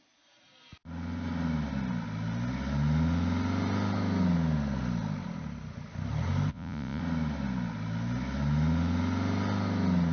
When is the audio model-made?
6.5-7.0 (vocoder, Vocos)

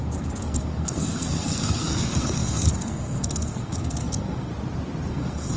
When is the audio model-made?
0.0-4.5 (codec, SNAC); 5.1-5.6

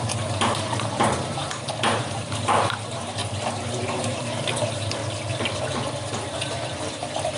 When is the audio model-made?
0.0-3.2 (vocoder, BigVGAN v2); 4.0-5.0; 5.6-7.4